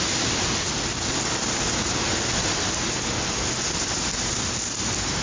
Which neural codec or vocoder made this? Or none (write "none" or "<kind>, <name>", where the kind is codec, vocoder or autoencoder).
none